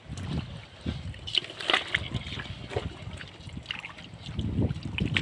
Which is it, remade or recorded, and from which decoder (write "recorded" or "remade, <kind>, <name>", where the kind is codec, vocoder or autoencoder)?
recorded